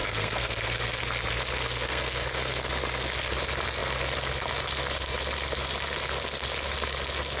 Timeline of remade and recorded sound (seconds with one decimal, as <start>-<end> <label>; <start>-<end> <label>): 0.0-1.0 remade; 1.0-1.6 recorded; 1.6-2.7 remade; 2.7-7.4 recorded